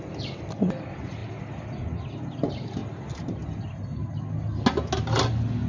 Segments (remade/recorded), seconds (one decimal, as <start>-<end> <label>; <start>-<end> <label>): 0.0-5.7 recorded